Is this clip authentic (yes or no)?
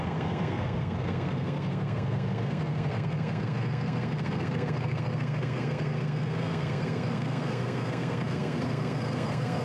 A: no